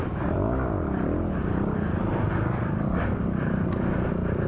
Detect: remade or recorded remade